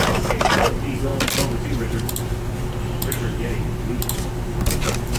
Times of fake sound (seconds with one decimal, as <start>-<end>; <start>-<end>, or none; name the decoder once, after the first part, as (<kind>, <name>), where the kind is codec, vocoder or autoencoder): none

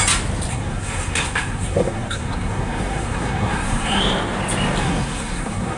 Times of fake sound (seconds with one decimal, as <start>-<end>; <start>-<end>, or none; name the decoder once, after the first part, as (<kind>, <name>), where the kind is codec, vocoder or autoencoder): 0.5-4.0 (codec, SNAC); 4.8-5.8

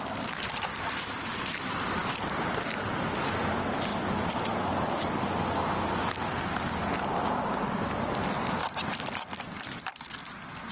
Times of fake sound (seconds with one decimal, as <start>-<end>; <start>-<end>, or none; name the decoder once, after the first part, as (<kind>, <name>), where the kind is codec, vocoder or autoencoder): none

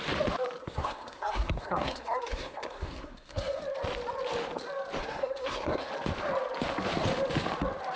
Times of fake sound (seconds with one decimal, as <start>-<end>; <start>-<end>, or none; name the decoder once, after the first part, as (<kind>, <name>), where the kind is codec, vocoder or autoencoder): 0.6-3.6 (codec, SNAC); 5.0-5.9